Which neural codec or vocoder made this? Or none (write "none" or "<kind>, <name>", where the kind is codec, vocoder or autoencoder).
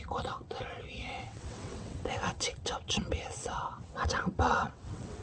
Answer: vocoder, WaveNeXt